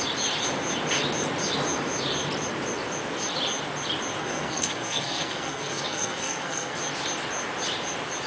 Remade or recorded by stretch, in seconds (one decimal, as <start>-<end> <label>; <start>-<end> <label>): 0.0-4.2 recorded; 4.2-6.8 remade; 6.8-8.3 recorded